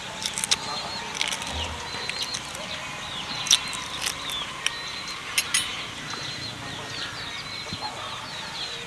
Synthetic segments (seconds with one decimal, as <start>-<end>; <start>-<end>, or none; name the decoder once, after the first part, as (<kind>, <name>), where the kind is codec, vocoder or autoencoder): none